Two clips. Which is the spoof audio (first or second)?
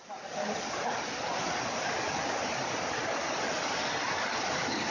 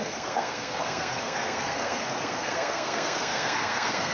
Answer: second